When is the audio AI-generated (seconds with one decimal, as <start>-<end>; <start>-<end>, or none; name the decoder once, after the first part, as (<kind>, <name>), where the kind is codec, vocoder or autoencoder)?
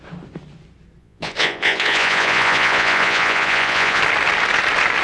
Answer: 1.0-4.0 (vocoder, Vocos)